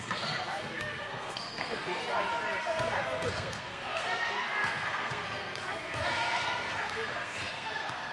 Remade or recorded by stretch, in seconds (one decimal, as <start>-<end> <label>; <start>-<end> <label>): 0.0-2.0 remade; 2.0-2.6 recorded; 2.6-8.1 remade